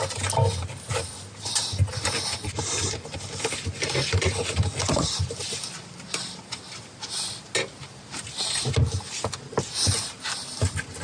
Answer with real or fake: real